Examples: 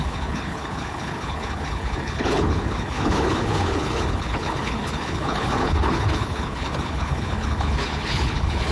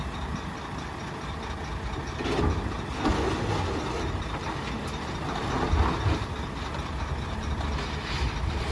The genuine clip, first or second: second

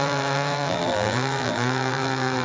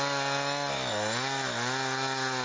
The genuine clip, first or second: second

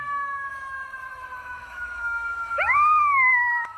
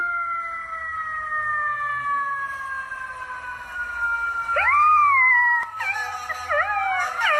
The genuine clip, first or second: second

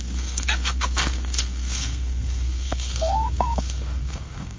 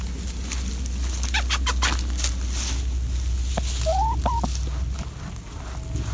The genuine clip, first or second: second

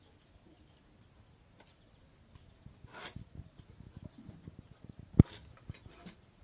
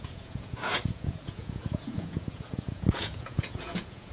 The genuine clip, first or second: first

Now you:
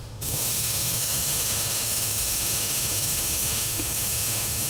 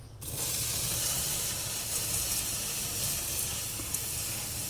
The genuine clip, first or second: second